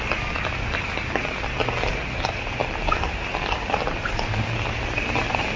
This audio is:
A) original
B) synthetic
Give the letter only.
A